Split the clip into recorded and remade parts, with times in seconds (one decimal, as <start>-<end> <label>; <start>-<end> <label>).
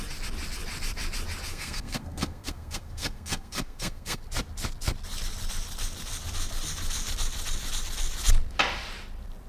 0.0-1.5 recorded; 1.5-4.2 remade; 4.2-9.5 recorded